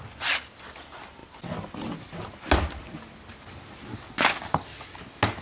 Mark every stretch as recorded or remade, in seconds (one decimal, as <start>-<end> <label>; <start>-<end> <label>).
0.0-5.4 recorded

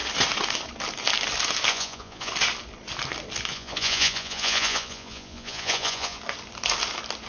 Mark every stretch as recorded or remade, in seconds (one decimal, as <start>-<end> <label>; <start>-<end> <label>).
0.0-1.7 recorded; 1.7-2.3 remade; 2.3-3.5 recorded; 3.5-6.2 remade; 6.2-7.3 recorded